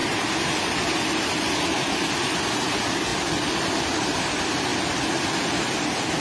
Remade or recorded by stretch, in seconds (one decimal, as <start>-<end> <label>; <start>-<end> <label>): 0.0-6.2 recorded